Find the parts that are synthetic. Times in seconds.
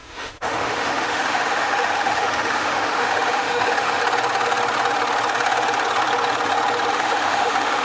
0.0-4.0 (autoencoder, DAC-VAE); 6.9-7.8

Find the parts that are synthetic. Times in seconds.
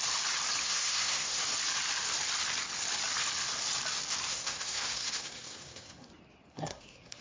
0.6-1.4 (codec, SNAC); 4.3-6.1; 6.5-7.2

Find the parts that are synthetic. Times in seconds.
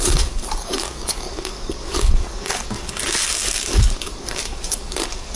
0.0-5.4 (codec, DAC)